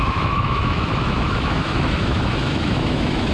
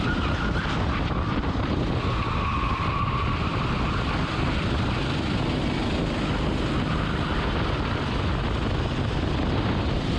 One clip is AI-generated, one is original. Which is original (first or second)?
second